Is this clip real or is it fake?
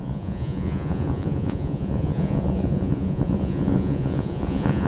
fake